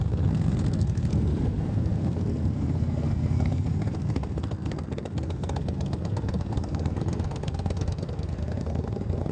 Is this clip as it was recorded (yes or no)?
no